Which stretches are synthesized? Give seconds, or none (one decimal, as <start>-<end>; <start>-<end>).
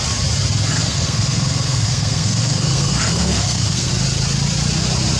0.8-3.9